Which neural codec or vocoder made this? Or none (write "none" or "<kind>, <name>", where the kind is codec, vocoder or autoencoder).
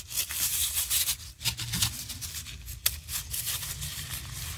none